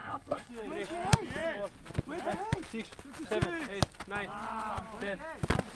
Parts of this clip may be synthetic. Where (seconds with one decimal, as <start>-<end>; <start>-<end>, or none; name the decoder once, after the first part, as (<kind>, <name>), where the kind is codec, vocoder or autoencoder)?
0.0-0.5 (codec, SNAC)